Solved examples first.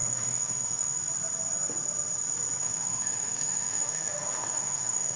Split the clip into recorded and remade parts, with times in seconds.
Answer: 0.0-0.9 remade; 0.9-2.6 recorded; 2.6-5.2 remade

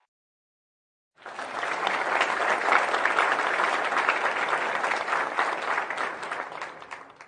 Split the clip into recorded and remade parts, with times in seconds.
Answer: 0.0-7.3 recorded